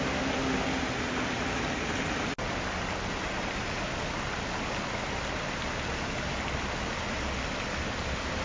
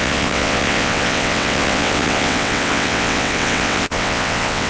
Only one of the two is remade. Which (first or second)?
second